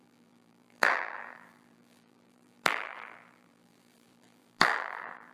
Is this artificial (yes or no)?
yes